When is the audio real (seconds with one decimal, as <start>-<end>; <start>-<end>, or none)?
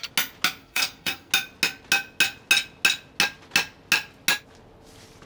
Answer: 0.0-0.6; 1.3-5.3